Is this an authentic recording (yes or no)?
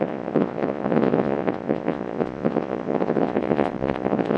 no